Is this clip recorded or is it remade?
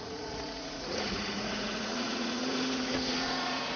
remade